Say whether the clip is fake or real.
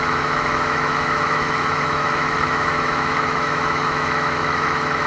fake